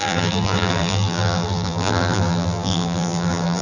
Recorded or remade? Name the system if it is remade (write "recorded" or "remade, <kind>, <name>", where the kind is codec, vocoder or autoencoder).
remade, vocoder, BigVGAN v2